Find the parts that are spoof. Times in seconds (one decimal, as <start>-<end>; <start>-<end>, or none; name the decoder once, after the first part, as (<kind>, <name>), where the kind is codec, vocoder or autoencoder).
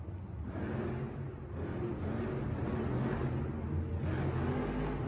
none